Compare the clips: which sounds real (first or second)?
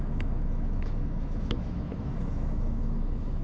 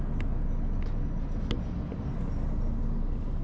second